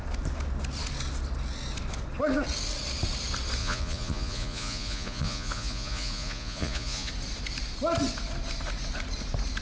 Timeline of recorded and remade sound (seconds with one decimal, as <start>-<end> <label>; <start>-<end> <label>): 0.0-3.6 recorded; 3.6-7.1 remade; 7.1-9.6 recorded